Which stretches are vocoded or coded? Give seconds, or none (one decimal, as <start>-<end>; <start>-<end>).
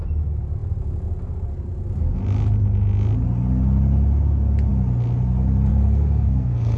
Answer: 5.7-6.8